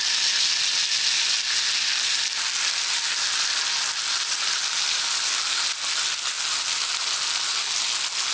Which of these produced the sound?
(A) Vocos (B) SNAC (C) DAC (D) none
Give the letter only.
D